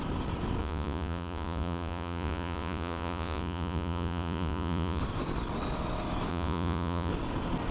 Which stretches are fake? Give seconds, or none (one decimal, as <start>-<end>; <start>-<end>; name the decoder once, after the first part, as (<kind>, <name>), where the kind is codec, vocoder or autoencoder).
0.6-5.0 (vocoder, Vocos); 6.3-7.1